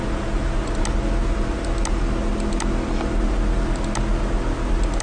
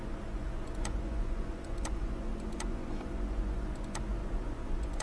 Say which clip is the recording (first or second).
first